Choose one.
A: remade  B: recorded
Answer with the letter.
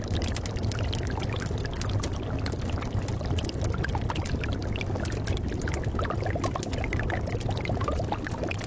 B